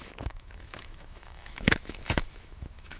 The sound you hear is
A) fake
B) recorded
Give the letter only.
A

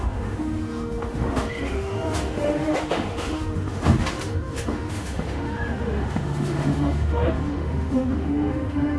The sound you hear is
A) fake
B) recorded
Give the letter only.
A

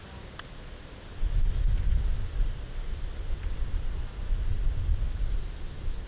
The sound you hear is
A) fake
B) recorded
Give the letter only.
B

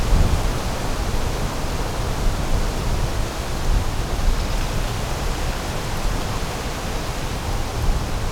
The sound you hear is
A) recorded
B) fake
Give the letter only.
A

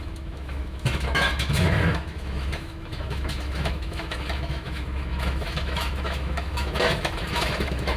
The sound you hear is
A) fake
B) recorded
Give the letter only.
A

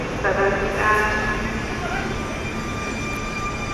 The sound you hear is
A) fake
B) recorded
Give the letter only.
B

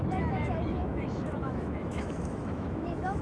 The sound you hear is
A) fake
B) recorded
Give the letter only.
A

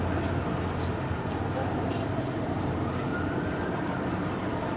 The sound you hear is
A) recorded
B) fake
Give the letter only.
A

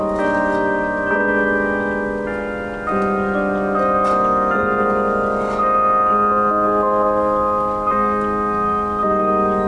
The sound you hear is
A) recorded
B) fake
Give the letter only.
A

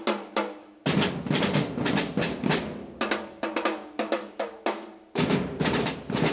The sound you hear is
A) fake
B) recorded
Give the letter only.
B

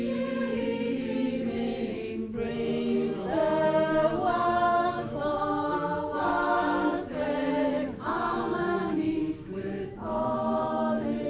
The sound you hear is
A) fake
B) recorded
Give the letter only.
A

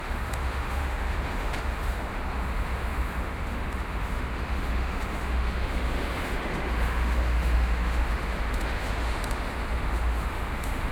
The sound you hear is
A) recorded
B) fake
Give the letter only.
B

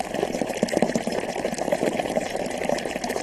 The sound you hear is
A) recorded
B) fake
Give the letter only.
A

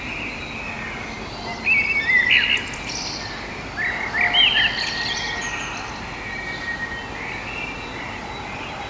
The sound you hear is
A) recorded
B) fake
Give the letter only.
A